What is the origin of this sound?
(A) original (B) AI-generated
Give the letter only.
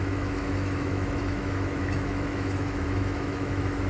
B